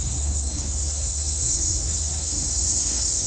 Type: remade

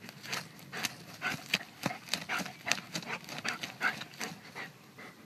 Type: recorded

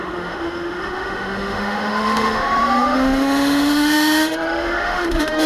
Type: remade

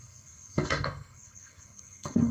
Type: remade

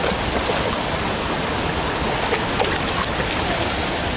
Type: recorded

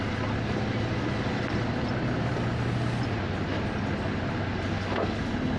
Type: recorded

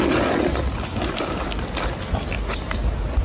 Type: recorded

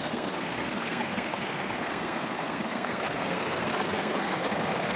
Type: remade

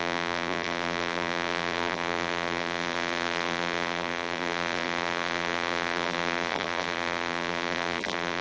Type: remade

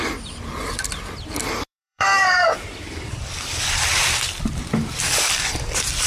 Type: remade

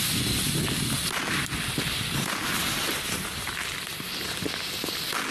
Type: recorded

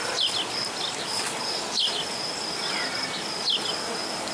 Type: recorded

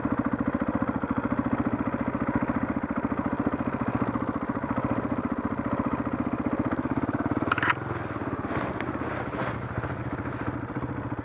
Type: recorded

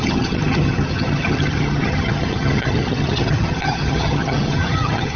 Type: remade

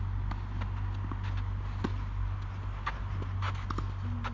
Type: recorded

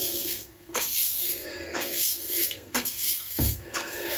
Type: remade